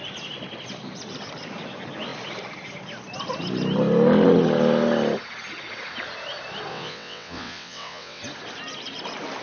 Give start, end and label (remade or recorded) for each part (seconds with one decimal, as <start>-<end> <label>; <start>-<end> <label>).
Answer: 0.0-6.7 recorded; 6.7-8.2 remade; 8.2-9.4 recorded

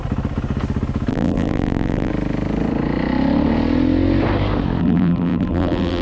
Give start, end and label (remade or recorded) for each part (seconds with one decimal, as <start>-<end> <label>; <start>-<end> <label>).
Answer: 0.0-1.1 recorded; 1.1-2.1 remade; 2.1-4.8 recorded; 4.8-6.0 remade

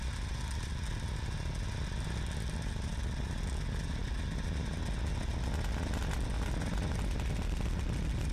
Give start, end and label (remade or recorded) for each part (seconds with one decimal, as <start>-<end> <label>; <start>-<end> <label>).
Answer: 0.0-8.3 recorded

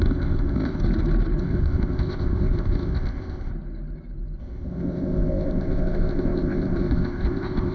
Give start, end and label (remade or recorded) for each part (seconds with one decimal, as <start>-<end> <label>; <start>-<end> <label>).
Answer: 0.0-0.8 remade; 0.8-1.4 recorded; 1.4-3.5 remade; 3.5-4.4 recorded; 4.4-7.7 remade

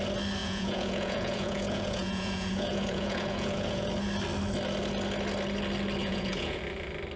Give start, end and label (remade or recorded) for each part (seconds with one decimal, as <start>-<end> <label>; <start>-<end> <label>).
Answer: 0.0-0.4 recorded; 0.4-3.9 remade; 3.9-6.0 recorded; 6.0-6.6 remade; 6.6-7.2 recorded